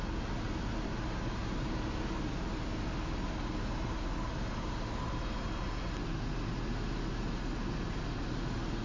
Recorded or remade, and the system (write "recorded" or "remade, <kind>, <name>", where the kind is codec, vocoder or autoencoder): recorded